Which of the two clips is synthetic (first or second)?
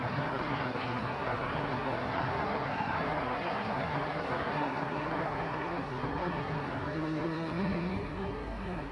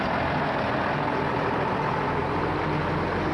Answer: first